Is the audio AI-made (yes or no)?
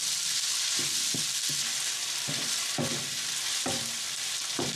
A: yes